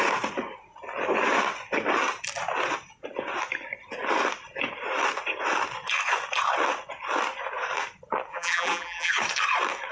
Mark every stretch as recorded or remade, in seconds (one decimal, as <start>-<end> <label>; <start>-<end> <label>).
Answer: 0.0-8.3 recorded; 8.3-9.1 remade; 9.1-9.9 recorded